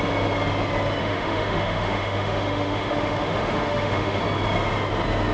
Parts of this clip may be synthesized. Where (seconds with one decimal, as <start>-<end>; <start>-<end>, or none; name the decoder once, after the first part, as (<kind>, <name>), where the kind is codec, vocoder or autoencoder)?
1.0-4.2 (autoencoder, DAC-VAE)